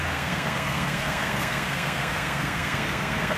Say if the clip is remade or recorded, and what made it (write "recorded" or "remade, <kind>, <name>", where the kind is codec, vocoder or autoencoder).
remade, codec, SNAC